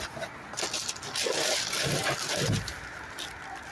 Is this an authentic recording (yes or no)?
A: yes